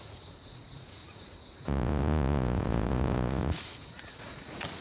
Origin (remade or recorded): remade